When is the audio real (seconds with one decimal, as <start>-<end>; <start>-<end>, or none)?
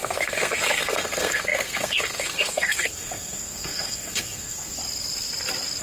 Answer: 4.8-5.8